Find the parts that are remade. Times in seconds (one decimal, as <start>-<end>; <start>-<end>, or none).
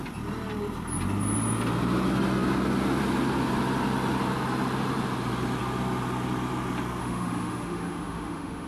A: 7.0-8.7